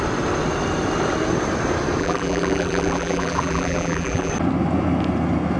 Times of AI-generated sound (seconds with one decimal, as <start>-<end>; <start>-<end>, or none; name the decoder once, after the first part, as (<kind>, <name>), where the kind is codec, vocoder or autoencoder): 2.0-4.3 (vocoder, BigVGAN v2)